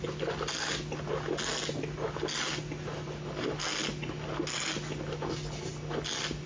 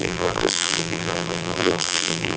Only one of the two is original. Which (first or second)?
first